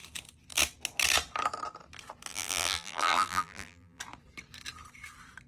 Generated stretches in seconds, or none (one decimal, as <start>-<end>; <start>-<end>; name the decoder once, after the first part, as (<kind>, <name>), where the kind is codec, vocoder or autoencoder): 2.3-4.0 (vocoder, BigVGAN v2)